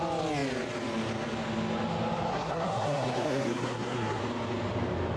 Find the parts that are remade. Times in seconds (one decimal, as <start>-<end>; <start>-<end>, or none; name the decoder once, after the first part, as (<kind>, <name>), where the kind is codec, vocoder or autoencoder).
2.3-4.2 (codec, SNAC)